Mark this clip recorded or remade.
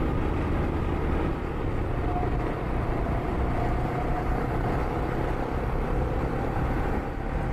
recorded